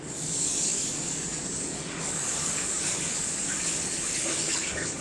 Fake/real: fake